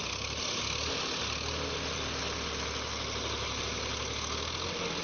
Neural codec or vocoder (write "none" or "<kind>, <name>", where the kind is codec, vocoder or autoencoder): none